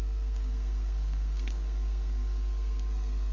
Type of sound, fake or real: fake